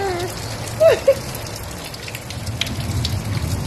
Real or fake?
real